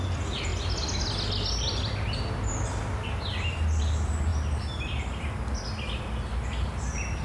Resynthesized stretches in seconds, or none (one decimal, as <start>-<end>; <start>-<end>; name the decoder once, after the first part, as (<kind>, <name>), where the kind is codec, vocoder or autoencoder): none